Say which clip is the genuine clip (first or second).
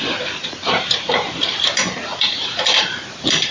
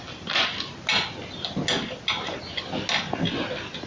second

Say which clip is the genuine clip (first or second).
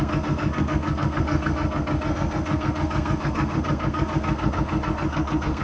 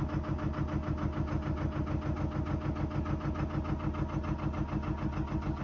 second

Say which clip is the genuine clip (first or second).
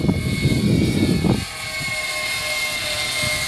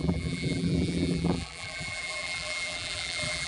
first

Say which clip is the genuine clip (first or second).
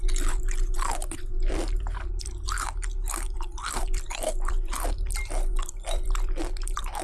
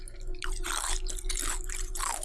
second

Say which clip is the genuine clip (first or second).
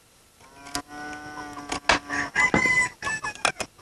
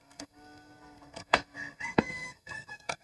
first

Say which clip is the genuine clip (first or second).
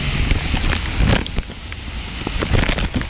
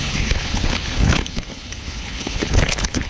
first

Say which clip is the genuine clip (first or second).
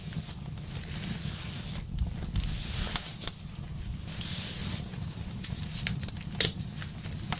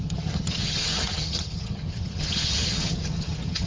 first